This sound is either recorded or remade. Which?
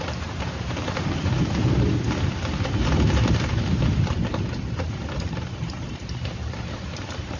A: remade